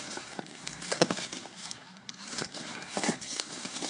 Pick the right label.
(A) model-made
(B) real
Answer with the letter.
A